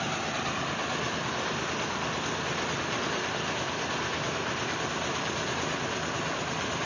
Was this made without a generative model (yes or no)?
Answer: yes